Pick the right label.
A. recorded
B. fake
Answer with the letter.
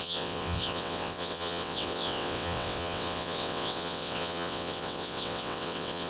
B